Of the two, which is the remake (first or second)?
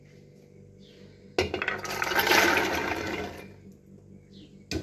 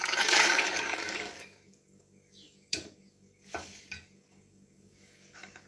second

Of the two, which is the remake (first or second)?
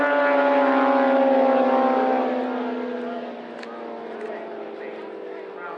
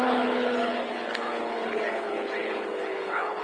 second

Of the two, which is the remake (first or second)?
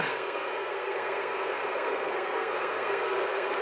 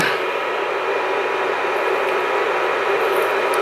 first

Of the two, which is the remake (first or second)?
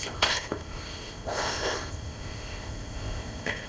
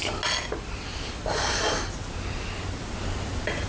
first